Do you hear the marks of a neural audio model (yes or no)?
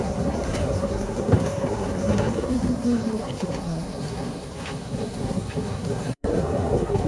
yes